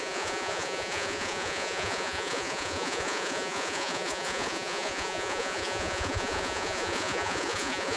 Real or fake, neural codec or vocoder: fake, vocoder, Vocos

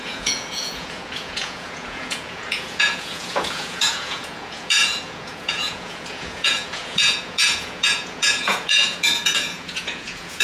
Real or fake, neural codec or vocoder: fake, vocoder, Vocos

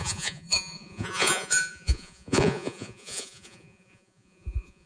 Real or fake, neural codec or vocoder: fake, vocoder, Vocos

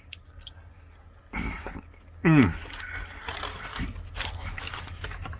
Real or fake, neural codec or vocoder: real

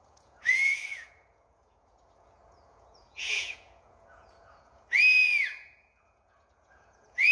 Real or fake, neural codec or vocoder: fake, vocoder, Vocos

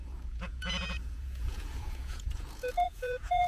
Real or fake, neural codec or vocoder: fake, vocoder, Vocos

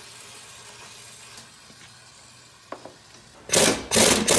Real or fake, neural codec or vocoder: real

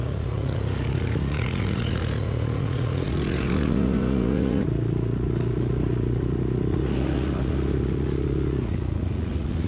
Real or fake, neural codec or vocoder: fake, vocoder, Vocos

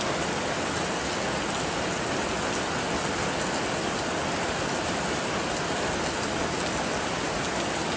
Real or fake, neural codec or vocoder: real